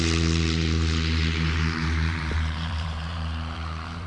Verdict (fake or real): fake